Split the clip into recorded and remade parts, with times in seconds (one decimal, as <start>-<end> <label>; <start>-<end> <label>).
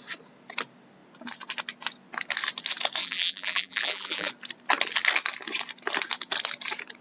0.0-3.0 recorded; 3.0-4.3 remade; 4.3-7.0 recorded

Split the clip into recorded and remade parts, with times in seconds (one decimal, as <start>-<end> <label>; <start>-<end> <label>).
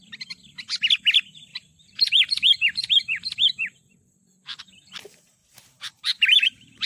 0.0-1.5 recorded; 1.5-4.6 remade; 4.6-5.4 recorded; 5.4-6.9 remade